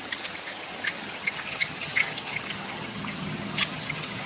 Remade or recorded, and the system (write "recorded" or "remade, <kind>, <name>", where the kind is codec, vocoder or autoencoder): remade, vocoder, HiFi-GAN